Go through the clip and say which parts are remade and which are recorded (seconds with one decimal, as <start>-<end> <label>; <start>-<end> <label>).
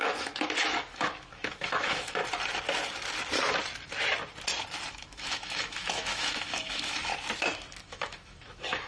0.0-2.2 remade; 2.2-4.9 recorded; 4.9-7.1 remade; 7.1-7.8 recorded; 7.8-8.9 remade